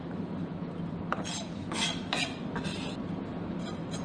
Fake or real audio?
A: real